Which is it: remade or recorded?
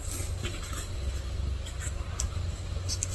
recorded